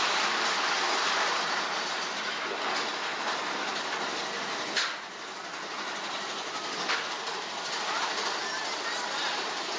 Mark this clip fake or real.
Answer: real